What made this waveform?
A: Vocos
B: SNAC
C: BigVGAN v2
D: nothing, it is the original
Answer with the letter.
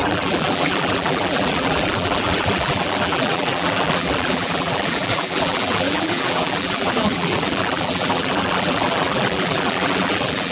C